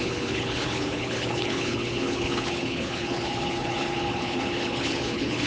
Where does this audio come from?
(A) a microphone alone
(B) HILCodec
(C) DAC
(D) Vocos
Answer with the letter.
B